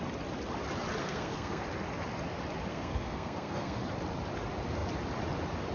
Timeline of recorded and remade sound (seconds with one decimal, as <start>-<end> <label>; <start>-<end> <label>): 0.0-1.0 recorded; 1.0-1.6 remade; 1.6-2.7 recorded; 2.7-3.8 remade; 3.8-5.7 recorded